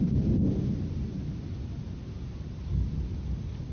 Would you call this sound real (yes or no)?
yes